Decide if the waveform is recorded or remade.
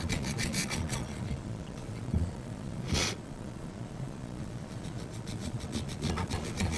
remade